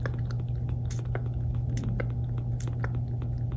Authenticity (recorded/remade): recorded